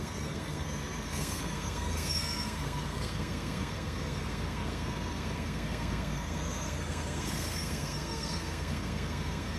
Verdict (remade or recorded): remade